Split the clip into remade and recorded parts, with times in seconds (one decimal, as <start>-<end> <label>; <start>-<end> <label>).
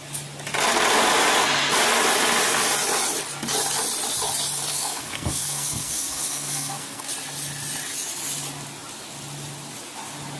0.0-4.7 recorded; 4.7-7.1 remade; 7.1-10.4 recorded